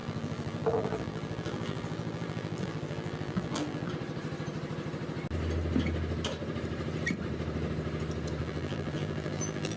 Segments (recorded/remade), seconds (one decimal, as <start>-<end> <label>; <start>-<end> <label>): 0.0-3.9 remade; 3.9-8.4 recorded; 8.4-9.8 remade